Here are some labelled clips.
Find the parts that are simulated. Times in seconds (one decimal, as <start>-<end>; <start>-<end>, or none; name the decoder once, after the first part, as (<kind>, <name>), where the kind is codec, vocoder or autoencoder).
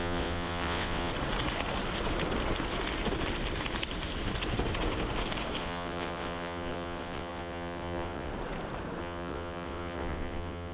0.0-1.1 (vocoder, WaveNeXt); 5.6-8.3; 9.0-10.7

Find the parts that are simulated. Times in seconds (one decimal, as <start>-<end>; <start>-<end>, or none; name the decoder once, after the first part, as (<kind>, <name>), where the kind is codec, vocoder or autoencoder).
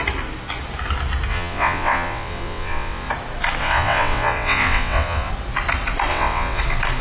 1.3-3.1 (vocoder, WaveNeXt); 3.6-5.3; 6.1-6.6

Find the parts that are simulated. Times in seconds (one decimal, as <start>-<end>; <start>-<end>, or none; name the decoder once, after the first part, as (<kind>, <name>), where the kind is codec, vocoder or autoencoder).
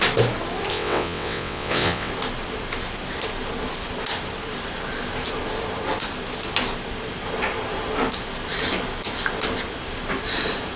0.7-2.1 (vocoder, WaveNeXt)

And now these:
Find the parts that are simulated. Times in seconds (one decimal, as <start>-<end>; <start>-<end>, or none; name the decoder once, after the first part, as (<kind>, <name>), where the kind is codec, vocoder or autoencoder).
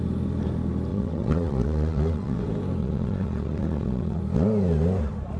0.9-2.4 (vocoder, WaveNeXt); 2.8-4.2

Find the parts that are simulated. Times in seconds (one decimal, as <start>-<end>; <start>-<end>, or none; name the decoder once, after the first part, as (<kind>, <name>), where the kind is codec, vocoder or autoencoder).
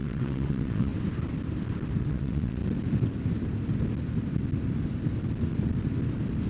0.0-0.9 (vocoder, WaveNeXt); 2.0-2.6